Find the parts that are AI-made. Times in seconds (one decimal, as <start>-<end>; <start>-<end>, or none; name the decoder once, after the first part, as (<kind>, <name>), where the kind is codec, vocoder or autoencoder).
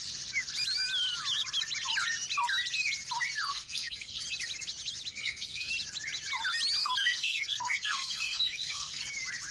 3.5-4.2 (codec, SNAC); 5.1-5.7; 6.8-9.0